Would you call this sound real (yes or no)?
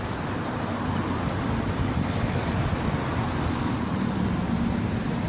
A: yes